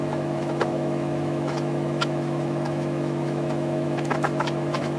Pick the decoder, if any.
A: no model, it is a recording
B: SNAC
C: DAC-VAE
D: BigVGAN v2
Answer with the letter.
C